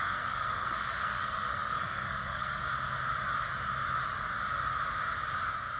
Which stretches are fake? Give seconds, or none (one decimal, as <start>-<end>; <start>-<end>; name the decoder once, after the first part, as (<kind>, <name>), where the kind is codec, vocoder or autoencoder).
0.0-2.6 (codec, SNAC)